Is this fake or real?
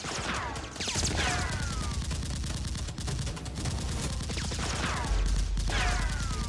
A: real